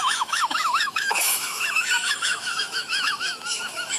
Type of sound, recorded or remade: remade